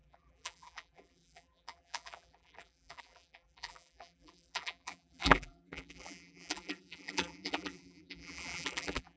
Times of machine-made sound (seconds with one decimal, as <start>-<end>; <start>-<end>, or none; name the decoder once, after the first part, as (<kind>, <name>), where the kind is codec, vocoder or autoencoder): 0.0-9.2 (vocoder, BigVGAN v2)

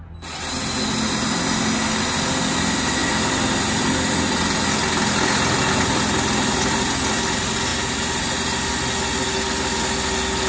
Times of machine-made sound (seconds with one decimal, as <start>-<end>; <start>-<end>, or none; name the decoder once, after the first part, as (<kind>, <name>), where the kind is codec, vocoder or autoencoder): none